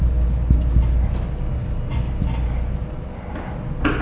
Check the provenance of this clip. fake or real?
real